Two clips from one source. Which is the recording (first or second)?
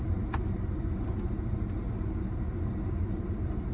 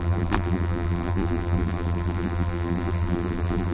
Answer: first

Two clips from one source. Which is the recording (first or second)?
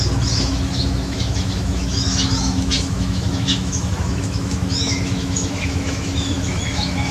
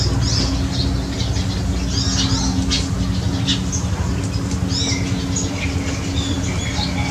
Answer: second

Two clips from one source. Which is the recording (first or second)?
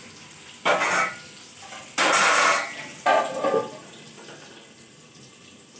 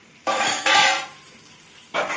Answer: first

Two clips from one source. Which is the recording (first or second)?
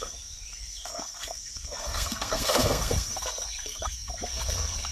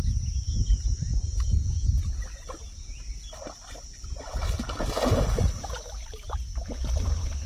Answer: second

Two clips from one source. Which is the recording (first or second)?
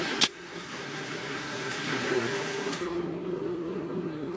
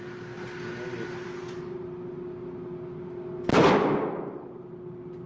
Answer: second